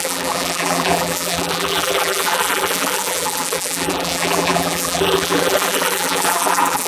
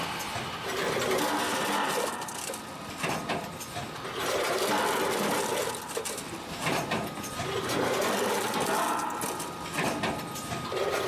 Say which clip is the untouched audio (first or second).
second